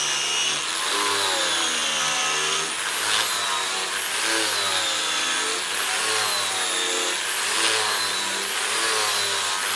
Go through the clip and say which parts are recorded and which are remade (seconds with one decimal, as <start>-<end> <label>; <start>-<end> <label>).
0.0-9.8 recorded